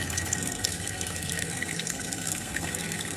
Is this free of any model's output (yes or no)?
no